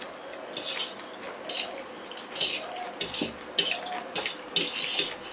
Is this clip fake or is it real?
real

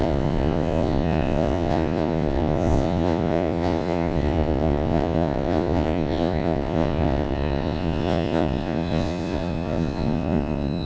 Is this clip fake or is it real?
fake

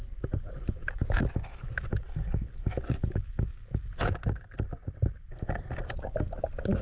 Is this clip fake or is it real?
real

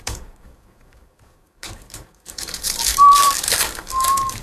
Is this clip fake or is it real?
fake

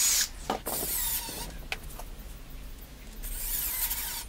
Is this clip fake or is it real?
real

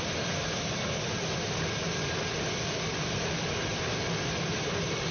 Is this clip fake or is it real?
real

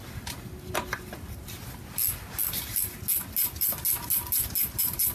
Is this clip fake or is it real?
real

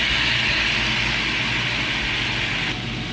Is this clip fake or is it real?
real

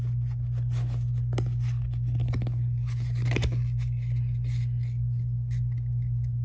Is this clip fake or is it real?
real